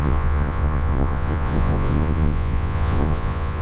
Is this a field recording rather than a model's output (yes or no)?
no